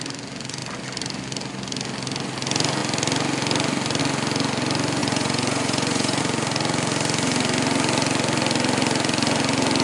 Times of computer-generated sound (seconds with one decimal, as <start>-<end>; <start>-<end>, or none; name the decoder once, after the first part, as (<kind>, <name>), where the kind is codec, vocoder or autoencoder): 5.0-6.2 (vocoder, Vocos)